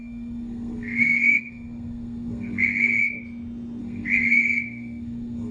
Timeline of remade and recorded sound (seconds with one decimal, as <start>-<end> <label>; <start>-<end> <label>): 0.0-3.0 remade; 3.0-3.8 recorded; 3.8-5.5 remade